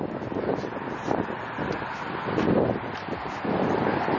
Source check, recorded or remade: recorded